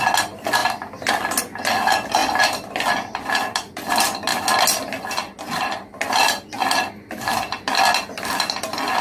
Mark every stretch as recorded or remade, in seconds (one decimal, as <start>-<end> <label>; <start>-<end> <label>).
0.0-9.0 recorded